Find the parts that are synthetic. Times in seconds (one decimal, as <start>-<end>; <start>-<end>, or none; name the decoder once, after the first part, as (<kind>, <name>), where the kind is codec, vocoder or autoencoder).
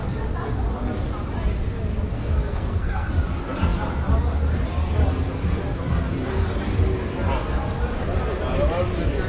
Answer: 2.1-3.1 (codec, SNAC)